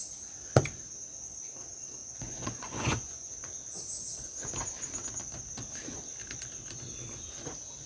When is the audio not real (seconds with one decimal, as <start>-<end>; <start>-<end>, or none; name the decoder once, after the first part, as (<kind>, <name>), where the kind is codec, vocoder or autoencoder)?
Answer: 2.0-3.3 (vocoder, Vocos)